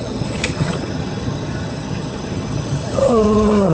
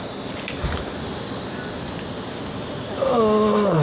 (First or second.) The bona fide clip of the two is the second